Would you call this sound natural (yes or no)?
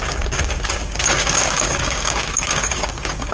no